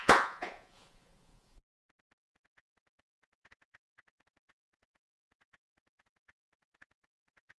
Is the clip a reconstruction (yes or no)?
yes